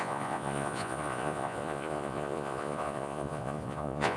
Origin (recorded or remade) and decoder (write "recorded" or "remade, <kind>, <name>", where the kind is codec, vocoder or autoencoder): remade, vocoder, Vocos